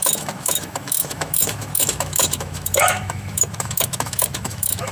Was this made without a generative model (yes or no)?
no